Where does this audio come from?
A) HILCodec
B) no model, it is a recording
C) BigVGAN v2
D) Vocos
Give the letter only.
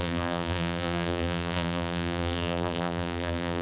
C